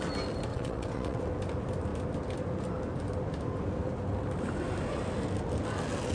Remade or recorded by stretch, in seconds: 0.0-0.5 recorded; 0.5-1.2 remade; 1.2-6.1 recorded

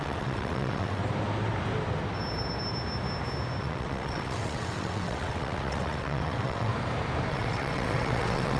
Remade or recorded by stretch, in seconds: 0.0-1.0 remade; 1.0-3.6 recorded; 3.6-6.7 remade; 6.7-7.3 recorded; 7.3-8.6 remade

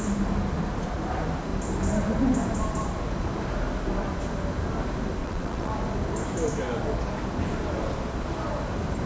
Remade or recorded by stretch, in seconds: 0.0-5.2 recorded; 5.2-5.7 remade; 5.7-9.1 recorded

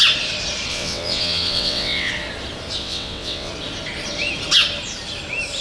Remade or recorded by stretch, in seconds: 0.0-0.7 recorded; 0.7-2.1 remade; 2.1-2.8 recorded; 2.8-3.5 remade; 3.5-5.6 recorded